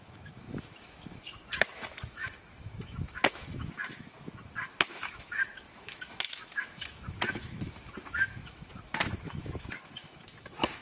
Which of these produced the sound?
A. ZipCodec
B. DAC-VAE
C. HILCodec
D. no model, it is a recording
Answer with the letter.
B